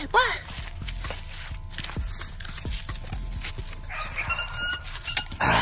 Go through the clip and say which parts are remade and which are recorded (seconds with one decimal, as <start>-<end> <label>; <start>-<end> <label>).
0.0-0.8 remade; 0.8-2.2 recorded; 2.2-2.8 remade; 2.8-3.6 recorded; 3.6-5.6 remade